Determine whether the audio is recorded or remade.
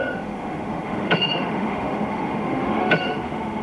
remade